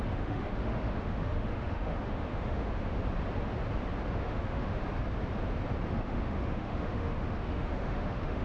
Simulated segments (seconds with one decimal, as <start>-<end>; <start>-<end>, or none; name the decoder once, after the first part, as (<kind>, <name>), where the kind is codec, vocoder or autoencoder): 0.0-3.0 (autoencoder, DAC-VAE); 4.1-4.8; 5.9-8.4